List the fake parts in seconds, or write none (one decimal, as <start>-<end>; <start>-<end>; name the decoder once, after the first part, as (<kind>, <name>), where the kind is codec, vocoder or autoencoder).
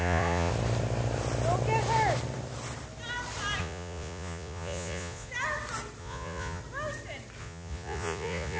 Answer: 0.0-0.5 (vocoder, Vocos); 3.6-5.3; 6.0-6.6; 7.4-8.6